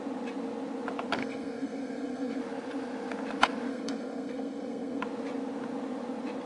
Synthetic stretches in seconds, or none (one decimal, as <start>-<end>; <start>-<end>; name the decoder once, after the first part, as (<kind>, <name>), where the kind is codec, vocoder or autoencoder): 1.2-2.4 (codec, SNAC); 3.7-5.0